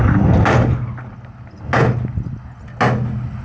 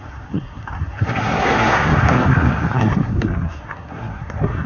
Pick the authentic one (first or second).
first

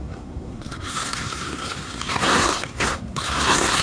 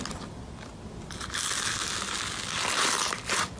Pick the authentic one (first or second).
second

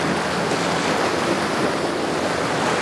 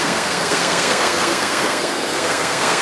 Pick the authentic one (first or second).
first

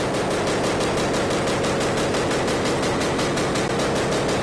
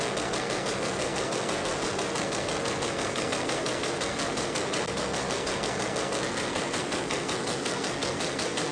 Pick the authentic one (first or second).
first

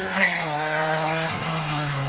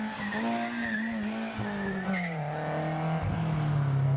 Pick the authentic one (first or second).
second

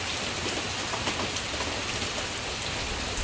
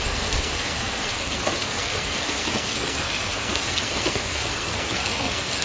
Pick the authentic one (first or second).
first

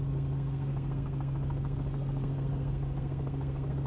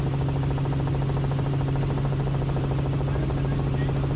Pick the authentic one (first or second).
second